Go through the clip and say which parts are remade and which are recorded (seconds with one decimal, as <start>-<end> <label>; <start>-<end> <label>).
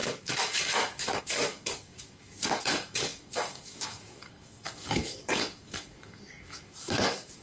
0.0-7.4 remade